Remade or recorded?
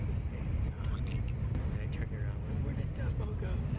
recorded